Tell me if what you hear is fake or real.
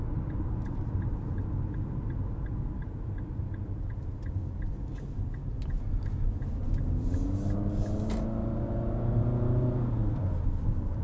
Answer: real